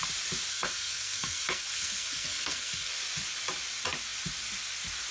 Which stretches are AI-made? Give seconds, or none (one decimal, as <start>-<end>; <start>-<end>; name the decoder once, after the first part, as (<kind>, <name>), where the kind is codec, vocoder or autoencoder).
0.5-2.9 (codec, SNAC)